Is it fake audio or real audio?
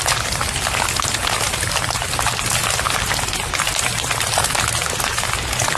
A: real